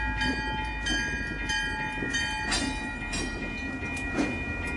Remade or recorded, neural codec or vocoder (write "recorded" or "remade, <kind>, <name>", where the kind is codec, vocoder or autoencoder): recorded